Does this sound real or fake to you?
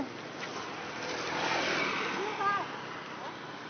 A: real